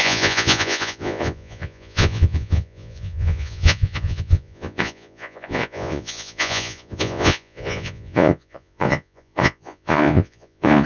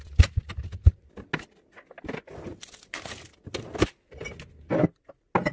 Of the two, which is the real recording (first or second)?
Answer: second